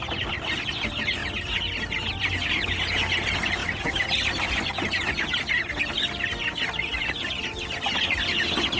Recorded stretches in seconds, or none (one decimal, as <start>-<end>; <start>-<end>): 0.0-3.6; 4.5-8.8